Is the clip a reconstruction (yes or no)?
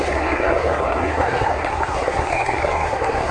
yes